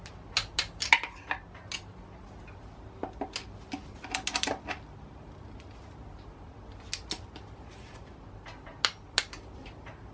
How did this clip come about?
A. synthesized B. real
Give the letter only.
B